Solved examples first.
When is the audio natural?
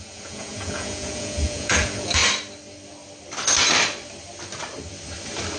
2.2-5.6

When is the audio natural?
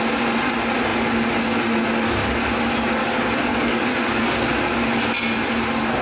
0.0-3.0; 4.2-6.0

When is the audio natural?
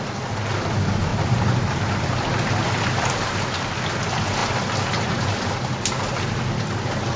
0.0-1.1; 3.4-7.2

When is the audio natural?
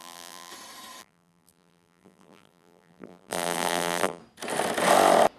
0.5-1.0; 4.2-5.4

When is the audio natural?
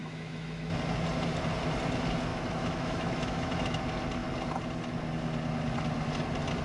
0.7-2.3; 3.8-6.6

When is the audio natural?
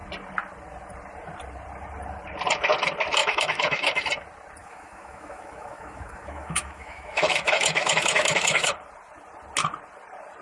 0.0-3.2; 4.0-4.6; 8.7-10.4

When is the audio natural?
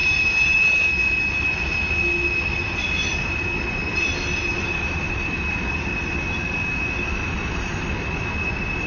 0.9-3.9; 5.5-8.9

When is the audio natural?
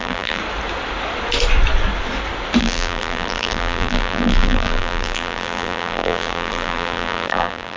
0.4-2.6